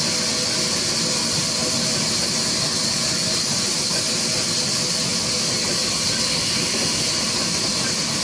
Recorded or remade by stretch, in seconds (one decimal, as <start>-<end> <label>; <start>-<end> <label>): 0.0-8.2 recorded